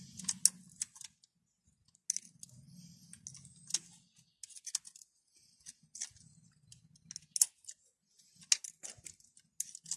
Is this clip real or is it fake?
real